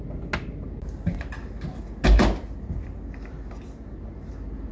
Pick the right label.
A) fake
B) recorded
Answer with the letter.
B